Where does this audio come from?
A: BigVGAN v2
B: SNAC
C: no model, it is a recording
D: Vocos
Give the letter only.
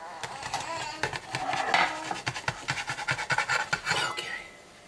C